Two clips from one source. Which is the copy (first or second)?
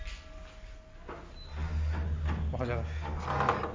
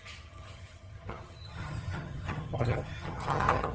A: second